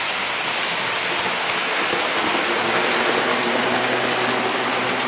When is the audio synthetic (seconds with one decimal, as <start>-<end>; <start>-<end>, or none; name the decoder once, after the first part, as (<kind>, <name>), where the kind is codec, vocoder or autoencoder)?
none